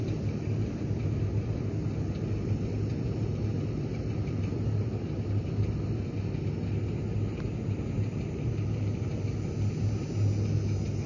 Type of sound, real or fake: real